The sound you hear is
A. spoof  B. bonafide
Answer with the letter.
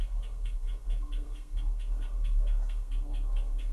A